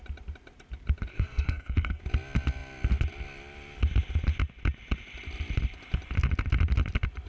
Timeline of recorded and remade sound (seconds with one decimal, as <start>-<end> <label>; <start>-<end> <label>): 0.0-1.1 recorded; 1.1-2.0 remade; 2.0-7.3 recorded